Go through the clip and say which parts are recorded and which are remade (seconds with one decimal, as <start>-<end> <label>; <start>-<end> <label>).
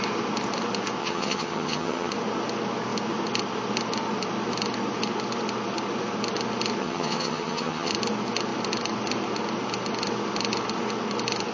0.0-1.0 recorded; 1.0-2.1 remade; 2.1-6.8 recorded; 6.8-7.9 remade; 7.9-11.5 recorded